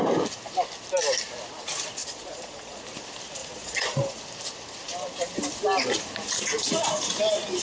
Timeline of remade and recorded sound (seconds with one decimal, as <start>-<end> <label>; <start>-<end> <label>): 0.0-2.0 recorded; 2.0-2.8 remade; 2.8-3.4 recorded; 3.4-4.2 remade; 4.2-7.6 recorded

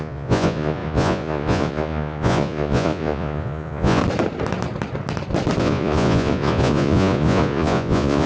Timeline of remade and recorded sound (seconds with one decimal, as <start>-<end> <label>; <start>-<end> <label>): 0.0-4.0 remade; 4.0-5.6 recorded; 5.6-8.3 remade

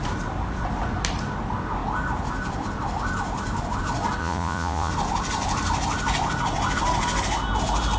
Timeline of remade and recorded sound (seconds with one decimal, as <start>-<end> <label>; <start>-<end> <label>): 0.0-4.2 recorded; 4.2-4.9 remade; 4.9-8.0 recorded

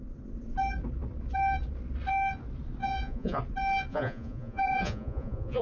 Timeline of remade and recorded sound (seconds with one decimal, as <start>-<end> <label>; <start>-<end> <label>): 0.0-2.8 recorded; 2.8-3.4 remade; 3.4-3.9 recorded; 3.9-5.6 remade

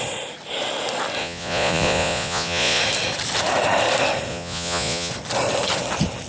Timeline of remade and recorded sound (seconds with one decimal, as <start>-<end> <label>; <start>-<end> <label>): 0.0-1.2 recorded; 1.2-2.8 remade; 2.8-4.3 recorded; 4.3-5.1 remade; 5.1-6.3 recorded

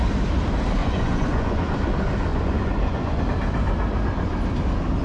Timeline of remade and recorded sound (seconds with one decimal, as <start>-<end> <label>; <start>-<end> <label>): 0.0-0.8 recorded; 0.8-1.6 remade; 1.6-2.3 recorded; 2.3-3.2 remade; 3.2-5.0 recorded

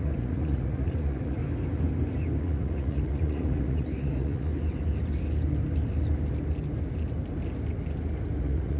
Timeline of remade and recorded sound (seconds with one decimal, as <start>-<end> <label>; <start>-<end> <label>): 0.0-1.4 remade; 1.4-2.4 recorded; 2.4-4.5 remade; 4.5-8.4 recorded; 8.4-8.8 remade